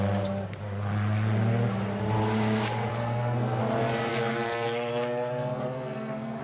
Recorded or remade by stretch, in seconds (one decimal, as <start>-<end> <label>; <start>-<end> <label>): 0.0-2.9 recorded; 2.9-3.6 remade; 3.6-4.1 recorded; 4.1-6.4 remade